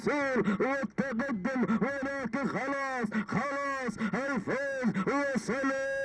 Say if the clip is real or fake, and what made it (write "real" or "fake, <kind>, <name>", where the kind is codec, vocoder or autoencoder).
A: real